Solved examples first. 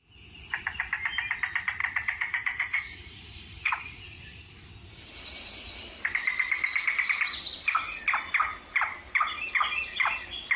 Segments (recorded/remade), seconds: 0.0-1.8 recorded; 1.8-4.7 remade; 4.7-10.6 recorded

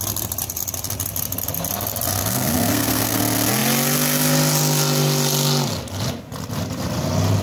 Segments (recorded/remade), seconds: 0.0-2.2 recorded; 2.2-3.2 remade; 3.2-7.4 recorded

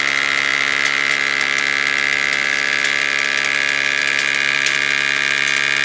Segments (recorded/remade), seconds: 0.0-5.8 recorded

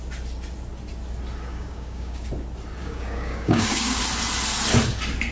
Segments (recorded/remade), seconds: 0.0-1.5 recorded; 1.5-2.3 remade; 2.3-2.8 recorded; 2.8-4.0 remade; 4.0-5.3 recorded

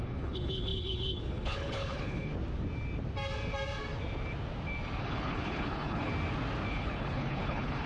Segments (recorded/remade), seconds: 0.0-2.3 remade; 2.3-5.0 recorded; 5.0-6.1 remade; 6.1-6.7 recorded; 6.7-7.9 remade

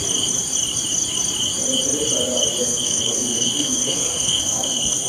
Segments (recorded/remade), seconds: 0.0-2.6 recorded; 2.6-5.1 remade

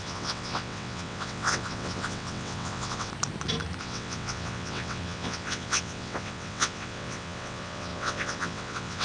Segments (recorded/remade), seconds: 0.0-3.1 remade; 3.1-3.8 recorded; 3.8-9.0 remade

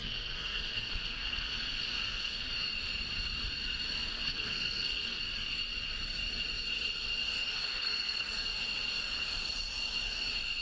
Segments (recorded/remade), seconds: 0.0-2.5 remade; 2.5-4.1 recorded; 4.1-5.2 remade; 5.2-7.7 recorded; 7.7-8.3 remade; 8.3-10.6 recorded